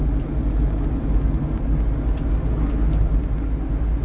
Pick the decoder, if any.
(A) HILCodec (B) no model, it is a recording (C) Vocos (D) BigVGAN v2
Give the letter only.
B